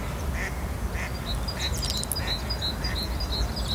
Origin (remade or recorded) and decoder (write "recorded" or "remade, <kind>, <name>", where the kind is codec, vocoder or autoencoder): recorded